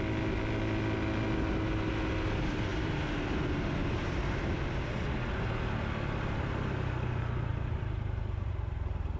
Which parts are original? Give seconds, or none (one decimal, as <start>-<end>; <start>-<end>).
0.0-2.7; 3.4-3.8; 5.0-7.5